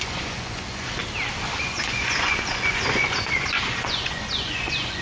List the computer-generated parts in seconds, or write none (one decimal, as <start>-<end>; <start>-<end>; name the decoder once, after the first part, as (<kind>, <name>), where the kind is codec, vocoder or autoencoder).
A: 0.0-1.0 (vocoder, Vocos); 1.6-5.0